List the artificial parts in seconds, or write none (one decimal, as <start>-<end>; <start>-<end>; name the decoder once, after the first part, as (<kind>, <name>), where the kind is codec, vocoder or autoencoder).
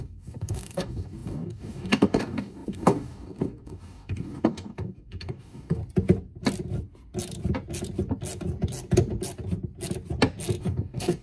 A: 0.0-5.8 (codec, DAC); 10.6-11.2